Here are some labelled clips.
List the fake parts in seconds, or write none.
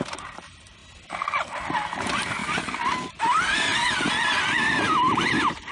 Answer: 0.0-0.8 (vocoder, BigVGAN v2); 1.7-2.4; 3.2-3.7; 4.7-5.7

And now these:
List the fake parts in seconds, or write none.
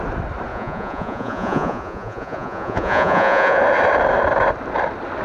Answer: 0.5-3.6 (vocoder, Vocos)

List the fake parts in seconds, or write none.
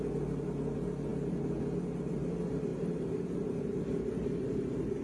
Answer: 2.7-5.0 (vocoder, BigVGAN v2)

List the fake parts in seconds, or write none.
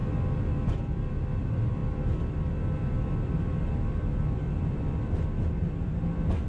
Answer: 0.7-6.5 (vocoder, BigVGAN v2)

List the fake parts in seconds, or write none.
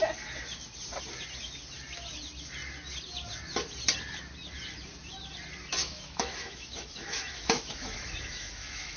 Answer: 5.8-9.0 (autoencoder, DAC-VAE)